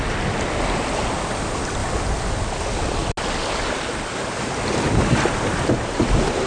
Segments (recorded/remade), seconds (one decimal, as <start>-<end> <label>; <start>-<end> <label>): 0.0-6.5 recorded